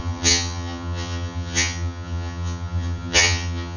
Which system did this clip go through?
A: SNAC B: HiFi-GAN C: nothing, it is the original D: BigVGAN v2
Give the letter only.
B